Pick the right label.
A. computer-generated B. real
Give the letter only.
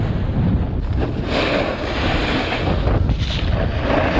B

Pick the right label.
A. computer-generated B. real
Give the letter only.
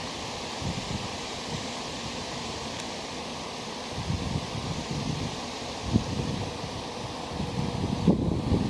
B